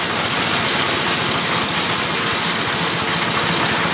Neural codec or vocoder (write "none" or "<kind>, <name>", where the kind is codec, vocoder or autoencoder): none